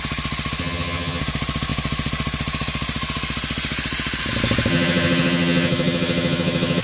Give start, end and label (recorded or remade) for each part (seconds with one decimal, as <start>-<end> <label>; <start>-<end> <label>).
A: 0.0-0.6 recorded; 0.6-1.2 remade; 1.2-4.7 recorded; 4.7-6.8 remade